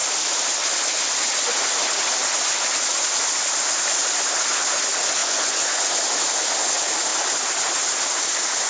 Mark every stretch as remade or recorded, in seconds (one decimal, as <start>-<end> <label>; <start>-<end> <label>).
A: 0.0-5.2 recorded; 5.2-5.9 remade; 5.9-8.7 recorded